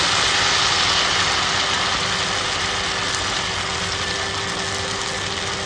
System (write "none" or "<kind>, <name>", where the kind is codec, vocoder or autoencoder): none